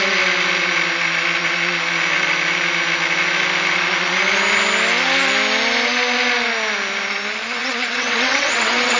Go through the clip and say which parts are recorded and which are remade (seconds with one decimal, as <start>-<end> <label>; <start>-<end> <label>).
0.0-7.6 recorded; 7.6-9.0 remade